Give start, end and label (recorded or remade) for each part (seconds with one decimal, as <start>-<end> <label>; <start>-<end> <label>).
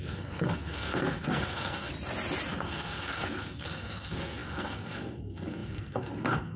0.0-1.9 remade; 1.9-2.5 recorded; 2.5-6.6 remade